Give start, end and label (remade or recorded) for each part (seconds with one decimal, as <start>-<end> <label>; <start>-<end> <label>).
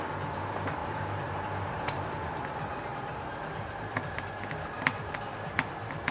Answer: 0.0-0.8 recorded; 0.8-2.1 remade; 2.1-2.9 recorded; 2.9-4.4 remade; 4.4-6.1 recorded